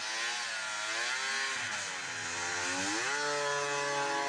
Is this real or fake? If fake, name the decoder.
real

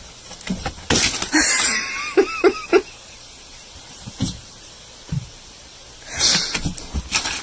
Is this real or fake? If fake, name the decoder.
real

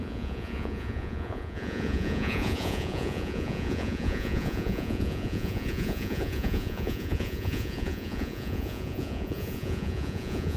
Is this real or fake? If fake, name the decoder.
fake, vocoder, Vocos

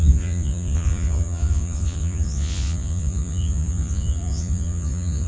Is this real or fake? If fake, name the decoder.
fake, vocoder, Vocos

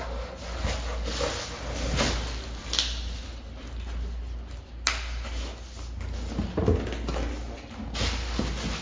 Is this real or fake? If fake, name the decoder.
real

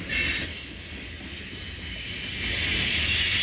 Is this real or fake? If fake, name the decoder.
real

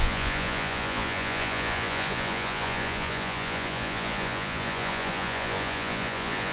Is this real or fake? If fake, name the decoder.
fake, vocoder, Vocos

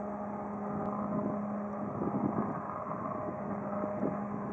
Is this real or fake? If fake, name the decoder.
real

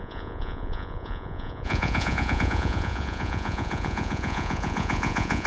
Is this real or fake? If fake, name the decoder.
fake, vocoder, Vocos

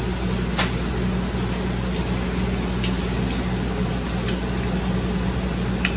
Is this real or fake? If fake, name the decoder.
real